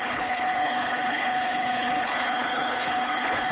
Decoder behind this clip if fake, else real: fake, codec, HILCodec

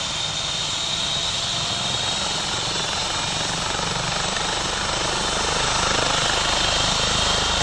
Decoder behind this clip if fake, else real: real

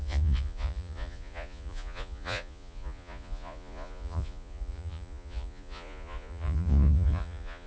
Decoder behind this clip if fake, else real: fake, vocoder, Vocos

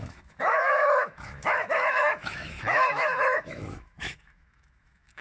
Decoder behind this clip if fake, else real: fake, autoencoder, DAC-VAE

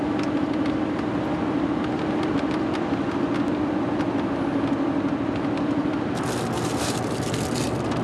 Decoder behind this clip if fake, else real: real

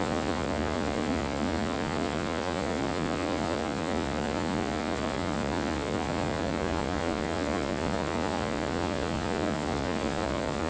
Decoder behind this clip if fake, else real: fake, vocoder, Vocos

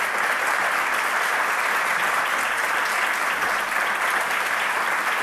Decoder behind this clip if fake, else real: real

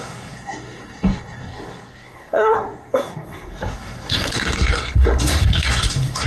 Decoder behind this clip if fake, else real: fake, codec, SNAC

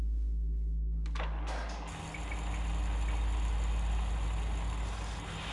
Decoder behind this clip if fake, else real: real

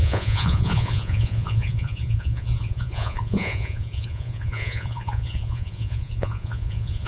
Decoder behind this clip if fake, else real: fake, vocoder, Vocos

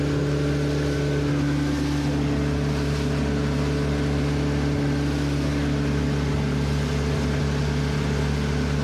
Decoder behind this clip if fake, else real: real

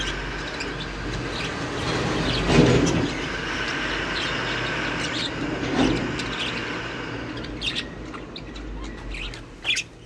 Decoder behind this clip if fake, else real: real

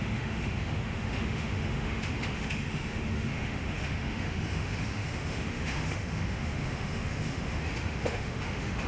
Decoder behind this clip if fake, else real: fake, autoencoder, DAC-VAE